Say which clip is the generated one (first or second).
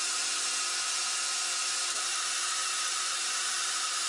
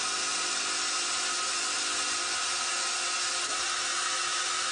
first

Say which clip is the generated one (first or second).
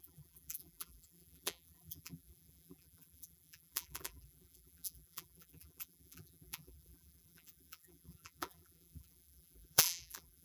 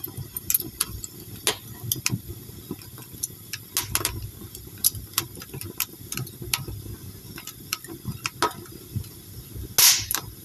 first